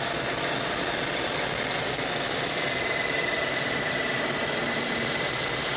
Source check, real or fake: fake